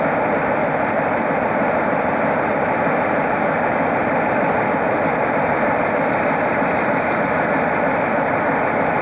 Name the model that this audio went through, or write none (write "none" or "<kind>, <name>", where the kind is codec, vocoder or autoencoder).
none